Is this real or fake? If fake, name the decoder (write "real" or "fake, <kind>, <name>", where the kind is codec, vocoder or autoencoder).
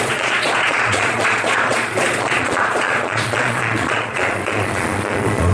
fake, vocoder, Vocos